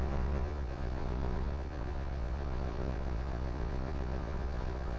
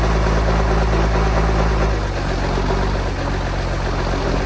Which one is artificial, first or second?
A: first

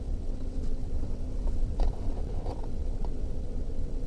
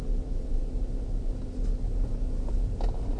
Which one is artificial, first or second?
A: first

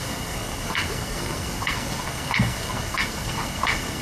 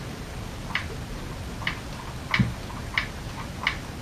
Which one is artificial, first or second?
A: first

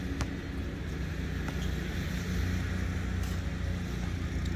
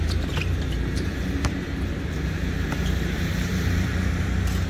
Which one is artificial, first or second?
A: second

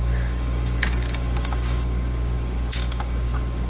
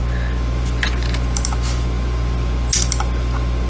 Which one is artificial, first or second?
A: first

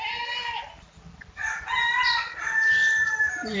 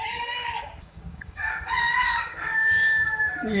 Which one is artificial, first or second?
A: second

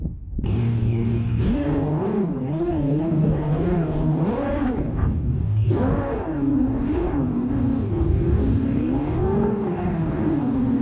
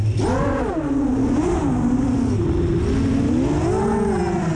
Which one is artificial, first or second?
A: first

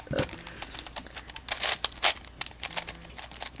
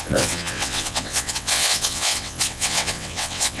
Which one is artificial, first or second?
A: second